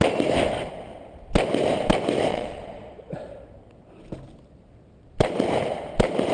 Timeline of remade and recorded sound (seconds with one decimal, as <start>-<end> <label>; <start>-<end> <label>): 0.0-2.3 recorded; 2.3-3.2 remade; 3.2-6.3 recorded